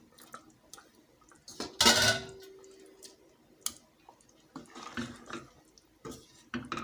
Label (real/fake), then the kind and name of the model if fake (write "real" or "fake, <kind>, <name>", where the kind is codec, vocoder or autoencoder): real